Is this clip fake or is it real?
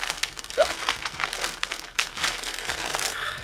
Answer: fake